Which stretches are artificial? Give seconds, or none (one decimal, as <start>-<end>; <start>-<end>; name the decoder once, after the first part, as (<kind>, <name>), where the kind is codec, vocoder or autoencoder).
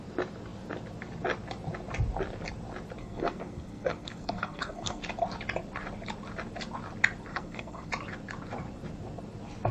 3.0-5.0 (codec, SNAC); 7.3-7.9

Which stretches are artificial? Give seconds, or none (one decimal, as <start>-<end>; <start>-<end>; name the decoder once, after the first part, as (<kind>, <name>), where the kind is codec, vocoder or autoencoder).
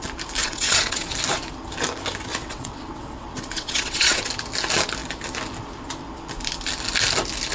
0.4-1.1 (vocoder, WaveNeXt); 2.3-4.2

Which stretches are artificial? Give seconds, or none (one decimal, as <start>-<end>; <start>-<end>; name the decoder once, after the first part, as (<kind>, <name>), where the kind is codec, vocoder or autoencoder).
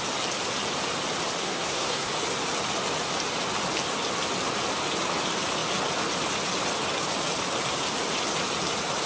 1.4-2.1 (codec, SNAC)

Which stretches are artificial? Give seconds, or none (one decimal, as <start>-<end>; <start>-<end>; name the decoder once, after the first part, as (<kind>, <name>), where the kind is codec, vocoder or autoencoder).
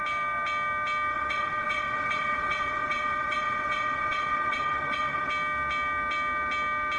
1.1-5.3 (vocoder, WaveNeXt)